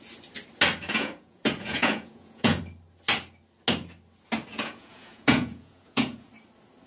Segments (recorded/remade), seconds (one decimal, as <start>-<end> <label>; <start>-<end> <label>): 0.0-0.9 recorded; 0.9-2.6 remade; 2.6-4.5 recorded; 4.5-6.3 remade; 6.3-6.9 recorded